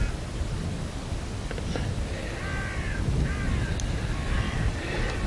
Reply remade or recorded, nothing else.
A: recorded